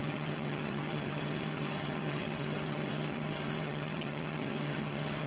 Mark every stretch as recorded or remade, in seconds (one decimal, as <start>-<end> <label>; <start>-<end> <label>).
0.0-5.3 remade